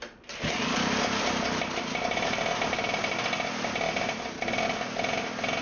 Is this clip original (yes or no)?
yes